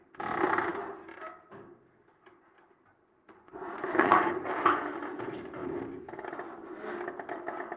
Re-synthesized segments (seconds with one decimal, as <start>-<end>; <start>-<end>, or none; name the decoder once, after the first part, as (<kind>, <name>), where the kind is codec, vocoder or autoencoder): 2.9-4.3 (vocoder, Vocos)